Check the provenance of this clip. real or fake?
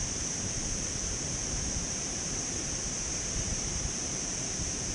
fake